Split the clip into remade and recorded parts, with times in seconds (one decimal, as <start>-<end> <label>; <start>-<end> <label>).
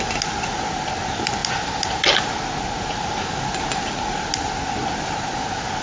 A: 0.0-5.8 recorded